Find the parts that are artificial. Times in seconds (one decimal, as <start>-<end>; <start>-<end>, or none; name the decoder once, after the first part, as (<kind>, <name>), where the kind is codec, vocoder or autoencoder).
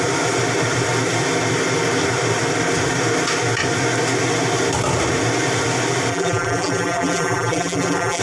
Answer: 6.1-8.2 (vocoder, BigVGAN v2)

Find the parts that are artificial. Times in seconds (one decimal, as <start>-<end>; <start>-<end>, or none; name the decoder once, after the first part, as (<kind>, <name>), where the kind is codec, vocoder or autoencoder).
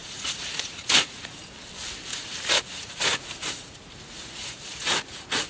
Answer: 0.0-1.4 (vocoder, Vocos); 2.1-5.5